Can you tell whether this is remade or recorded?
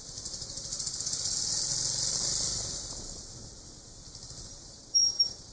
recorded